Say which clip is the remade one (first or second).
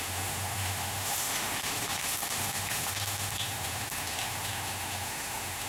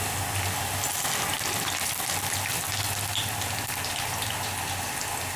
first